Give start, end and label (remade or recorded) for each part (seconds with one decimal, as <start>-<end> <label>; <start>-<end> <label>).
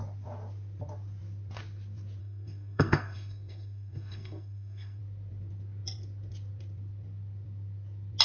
0.0-2.2 recorded; 2.2-5.0 remade; 5.0-8.2 recorded